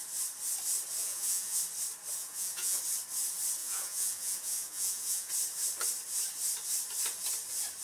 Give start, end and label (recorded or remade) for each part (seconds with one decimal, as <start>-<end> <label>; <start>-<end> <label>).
0.0-1.0 recorded; 1.0-1.6 remade; 1.6-2.2 recorded; 2.2-2.8 remade; 2.8-3.6 recorded; 3.6-5.3 remade; 5.3-7.8 recorded